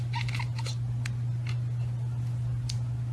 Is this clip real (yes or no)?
yes